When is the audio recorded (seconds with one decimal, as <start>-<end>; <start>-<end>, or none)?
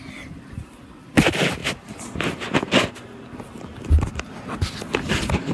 1.6-2.2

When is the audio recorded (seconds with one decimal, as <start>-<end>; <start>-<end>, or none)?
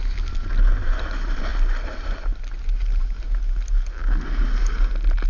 0.0-5.3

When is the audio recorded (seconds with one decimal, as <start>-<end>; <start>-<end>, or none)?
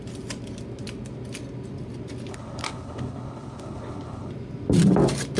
0.0-2.3; 4.3-5.4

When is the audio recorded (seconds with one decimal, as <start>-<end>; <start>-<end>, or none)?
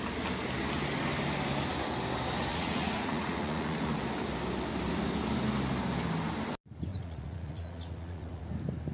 0.0-2.5; 3.9-6.9; 8.4-8.9